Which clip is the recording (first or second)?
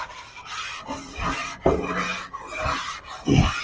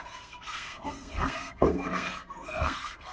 first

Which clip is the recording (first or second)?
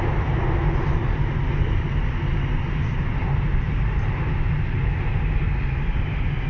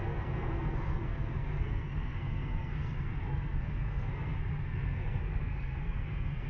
first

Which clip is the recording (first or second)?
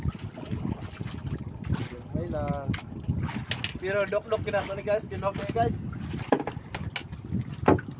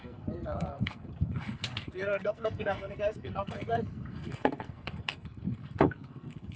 first